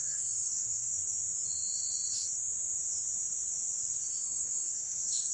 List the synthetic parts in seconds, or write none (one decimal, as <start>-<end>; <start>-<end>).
0.0-0.9; 4.1-5.3